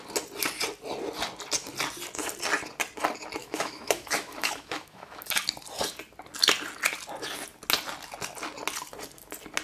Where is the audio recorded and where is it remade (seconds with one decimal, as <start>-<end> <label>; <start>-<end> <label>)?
0.0-3.4 recorded; 3.4-5.2 remade; 5.2-9.6 recorded